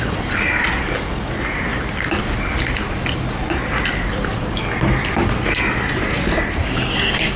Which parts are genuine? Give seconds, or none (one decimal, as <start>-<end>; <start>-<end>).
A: 0.0-6.6